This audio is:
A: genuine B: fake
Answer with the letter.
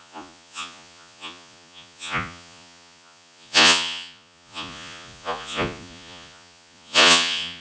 B